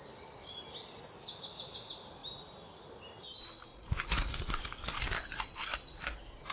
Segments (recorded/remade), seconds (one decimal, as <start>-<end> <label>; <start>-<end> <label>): 0.0-3.7 recorded; 3.7-4.6 remade; 4.6-6.5 recorded